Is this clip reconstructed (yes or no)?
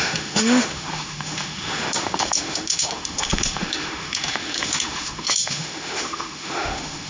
yes